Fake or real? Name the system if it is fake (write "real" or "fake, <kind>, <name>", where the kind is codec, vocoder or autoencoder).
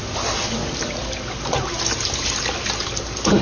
real